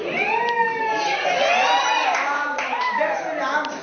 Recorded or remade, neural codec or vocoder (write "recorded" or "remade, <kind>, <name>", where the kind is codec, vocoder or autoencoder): recorded